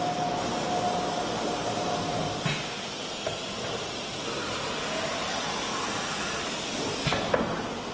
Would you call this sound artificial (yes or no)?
no